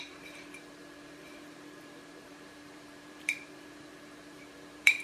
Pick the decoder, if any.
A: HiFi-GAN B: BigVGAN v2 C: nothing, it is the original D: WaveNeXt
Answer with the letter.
B